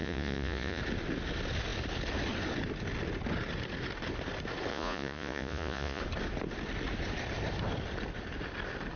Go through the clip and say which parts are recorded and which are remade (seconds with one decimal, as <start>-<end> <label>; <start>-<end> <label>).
0.0-0.8 remade; 0.8-4.7 recorded; 4.7-6.0 remade; 6.0-9.0 recorded